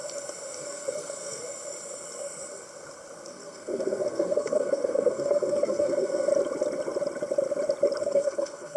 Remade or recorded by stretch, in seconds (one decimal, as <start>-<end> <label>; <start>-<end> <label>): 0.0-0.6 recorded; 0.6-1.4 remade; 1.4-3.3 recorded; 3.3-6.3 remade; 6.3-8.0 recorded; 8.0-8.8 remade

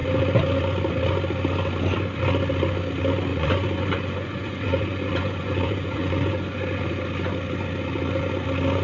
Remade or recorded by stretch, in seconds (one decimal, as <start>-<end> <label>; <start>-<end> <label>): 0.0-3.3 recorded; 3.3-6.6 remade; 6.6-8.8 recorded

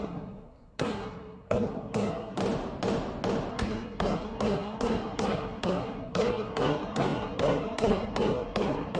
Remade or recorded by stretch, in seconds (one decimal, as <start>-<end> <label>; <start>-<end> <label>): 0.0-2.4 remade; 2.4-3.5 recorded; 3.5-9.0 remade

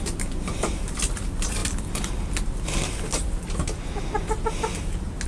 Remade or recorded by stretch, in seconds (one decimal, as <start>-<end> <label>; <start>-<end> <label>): 0.0-5.3 recorded

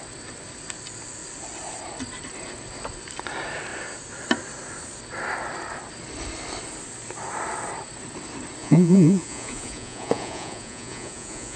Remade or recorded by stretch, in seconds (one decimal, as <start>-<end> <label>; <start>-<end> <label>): 0.0-8.6 recorded; 8.6-11.6 remade